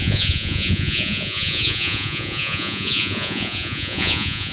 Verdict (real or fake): fake